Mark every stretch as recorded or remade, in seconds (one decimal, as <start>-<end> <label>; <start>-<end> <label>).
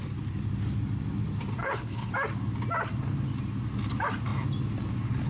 0.0-1.6 recorded; 1.6-2.1 remade; 2.1-5.3 recorded